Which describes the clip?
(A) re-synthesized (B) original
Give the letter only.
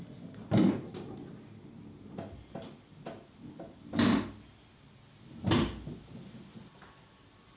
B